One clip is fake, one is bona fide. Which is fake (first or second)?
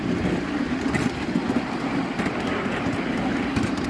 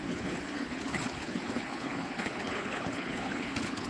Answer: second